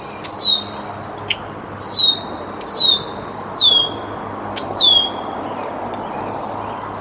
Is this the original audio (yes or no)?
yes